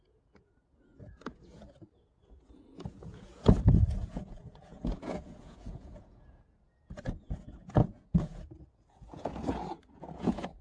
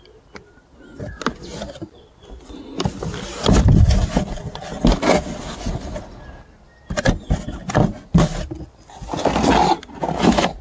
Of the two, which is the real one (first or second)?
second